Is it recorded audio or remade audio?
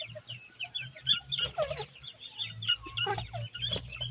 recorded